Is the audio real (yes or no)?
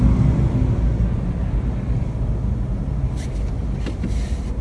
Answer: yes